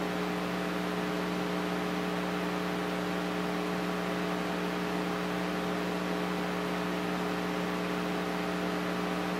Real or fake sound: real